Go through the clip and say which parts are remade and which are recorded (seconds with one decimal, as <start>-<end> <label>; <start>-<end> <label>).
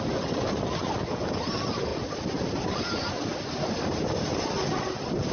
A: 0.0-5.3 recorded